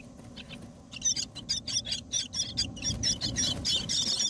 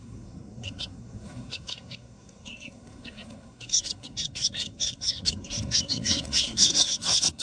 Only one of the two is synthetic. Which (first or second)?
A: second